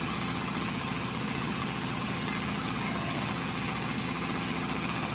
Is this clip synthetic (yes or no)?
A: yes